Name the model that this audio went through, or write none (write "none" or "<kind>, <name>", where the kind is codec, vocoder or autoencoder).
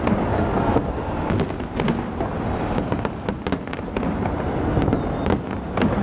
none